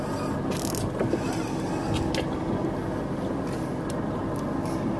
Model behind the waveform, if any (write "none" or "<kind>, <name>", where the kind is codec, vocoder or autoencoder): none